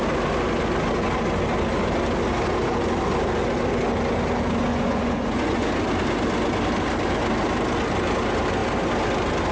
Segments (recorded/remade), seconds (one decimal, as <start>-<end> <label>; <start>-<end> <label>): 0.0-4.7 recorded; 4.7-5.7 remade; 5.7-9.5 recorded